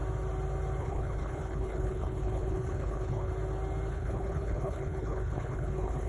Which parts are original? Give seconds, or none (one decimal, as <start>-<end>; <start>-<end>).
0.0-0.8; 3.3-3.9